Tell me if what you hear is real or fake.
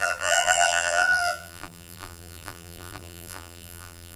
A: fake